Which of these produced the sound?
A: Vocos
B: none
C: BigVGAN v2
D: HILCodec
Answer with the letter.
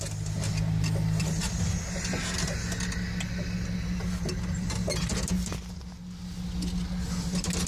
B